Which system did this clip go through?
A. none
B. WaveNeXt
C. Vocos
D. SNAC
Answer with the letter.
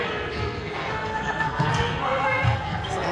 D